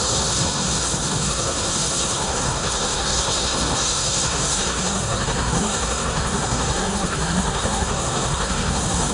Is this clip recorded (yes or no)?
no